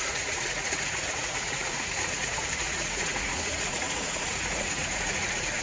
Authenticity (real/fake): fake